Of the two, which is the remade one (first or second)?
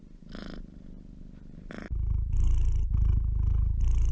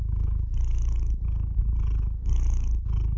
second